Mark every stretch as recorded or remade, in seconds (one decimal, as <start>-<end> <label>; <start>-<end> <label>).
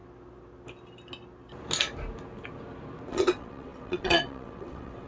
0.0-3.1 recorded; 3.1-5.1 remade